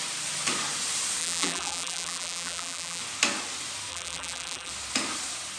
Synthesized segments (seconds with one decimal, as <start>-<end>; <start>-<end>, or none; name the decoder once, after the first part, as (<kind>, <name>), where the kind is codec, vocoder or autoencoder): 1.2-3.0 (vocoder, BigVGAN v2); 3.9-4.7